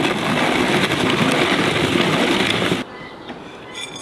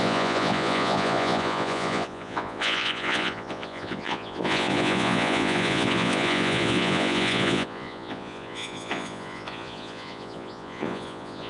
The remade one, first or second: second